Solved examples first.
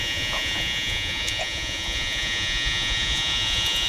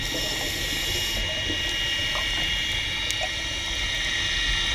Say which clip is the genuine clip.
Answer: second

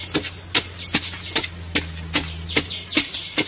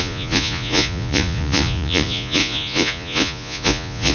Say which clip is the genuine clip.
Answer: first